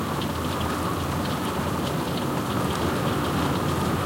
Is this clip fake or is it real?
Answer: real